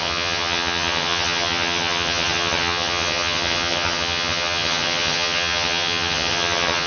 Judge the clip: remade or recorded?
remade